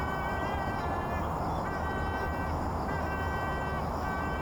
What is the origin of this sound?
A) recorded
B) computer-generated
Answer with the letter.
A